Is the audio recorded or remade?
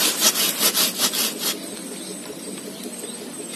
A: recorded